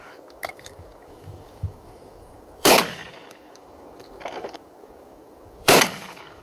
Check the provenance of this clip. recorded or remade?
remade